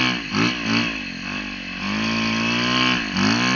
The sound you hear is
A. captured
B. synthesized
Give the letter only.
A